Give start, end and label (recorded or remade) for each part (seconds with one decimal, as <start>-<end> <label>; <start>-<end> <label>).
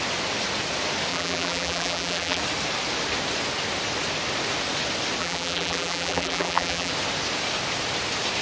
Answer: 0.0-1.1 recorded; 1.1-2.4 remade; 2.4-5.2 recorded; 5.2-6.9 remade; 6.9-8.4 recorded